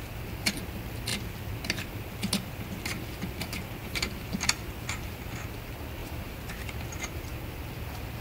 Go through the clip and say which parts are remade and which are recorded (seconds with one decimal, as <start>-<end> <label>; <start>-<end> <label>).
0.0-3.8 recorded; 3.8-5.2 remade; 5.2-6.0 recorded; 6.0-6.7 remade; 6.7-8.2 recorded